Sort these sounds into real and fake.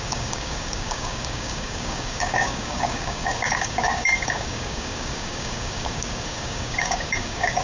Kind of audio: fake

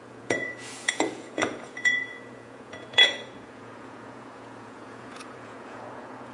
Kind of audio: fake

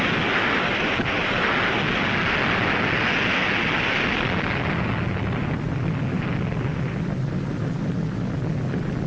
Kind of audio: real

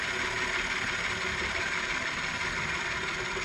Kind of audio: real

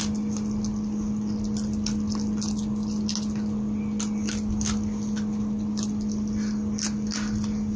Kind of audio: real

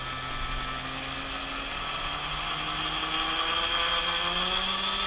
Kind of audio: real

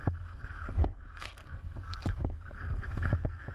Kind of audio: fake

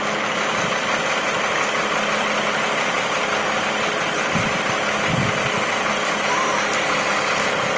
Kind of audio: real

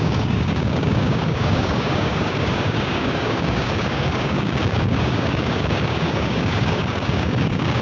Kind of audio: fake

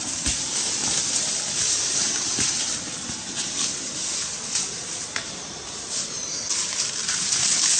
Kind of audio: real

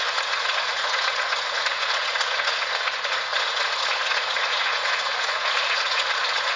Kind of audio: fake